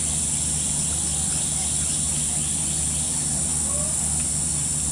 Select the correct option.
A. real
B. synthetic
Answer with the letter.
A